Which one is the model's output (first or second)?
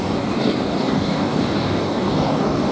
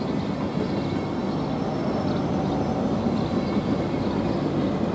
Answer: first